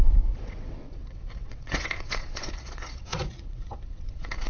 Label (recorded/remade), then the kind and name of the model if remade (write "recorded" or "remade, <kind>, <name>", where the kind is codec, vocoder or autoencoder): remade, vocoder, WaveNeXt